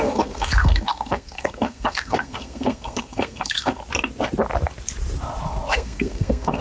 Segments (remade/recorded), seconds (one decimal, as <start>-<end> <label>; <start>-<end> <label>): 0.0-3.8 remade; 3.8-5.7 recorded; 5.7-6.6 remade

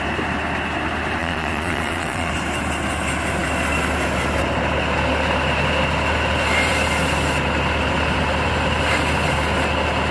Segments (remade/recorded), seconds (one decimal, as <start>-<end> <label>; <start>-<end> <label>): 0.0-1.2 recorded; 1.2-2.3 remade; 2.3-10.1 recorded

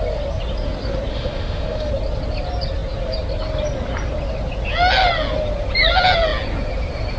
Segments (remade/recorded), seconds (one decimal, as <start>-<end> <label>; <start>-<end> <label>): 0.0-1.1 recorded; 1.1-1.9 remade; 1.9-7.2 recorded

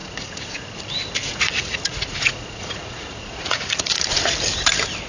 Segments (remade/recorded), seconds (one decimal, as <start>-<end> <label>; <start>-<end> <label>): 0.0-0.6 remade; 0.6-1.2 recorded; 1.2-4.3 remade; 4.3-5.1 recorded

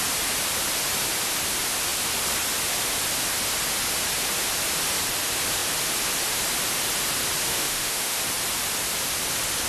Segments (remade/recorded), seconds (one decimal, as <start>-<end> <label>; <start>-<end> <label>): 0.0-7.5 recorded; 7.5-8.2 remade; 8.2-9.7 recorded

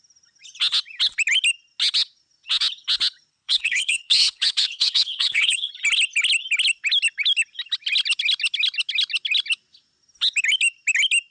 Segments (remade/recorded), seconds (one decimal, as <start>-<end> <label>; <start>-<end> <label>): 0.0-3.3 recorded; 3.3-5.7 remade; 5.7-11.3 recorded

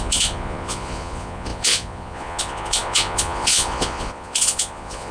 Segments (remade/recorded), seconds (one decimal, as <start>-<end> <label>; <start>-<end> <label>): 0.0-5.1 remade